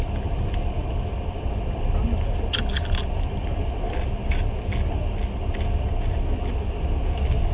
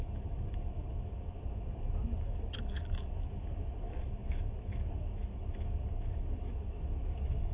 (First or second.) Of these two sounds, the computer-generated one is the second